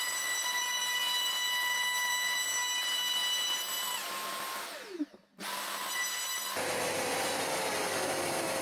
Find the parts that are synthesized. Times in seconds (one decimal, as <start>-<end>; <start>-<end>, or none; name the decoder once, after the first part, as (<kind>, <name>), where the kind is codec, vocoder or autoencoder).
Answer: none